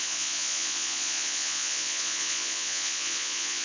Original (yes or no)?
no